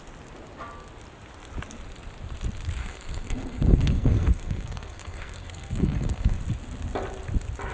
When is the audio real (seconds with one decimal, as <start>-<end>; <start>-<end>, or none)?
0.0-2.8; 6.4-7.7